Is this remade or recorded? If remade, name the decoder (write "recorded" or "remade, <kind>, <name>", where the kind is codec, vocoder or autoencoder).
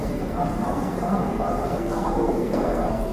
remade, codec, SNAC